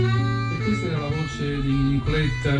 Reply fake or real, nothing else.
real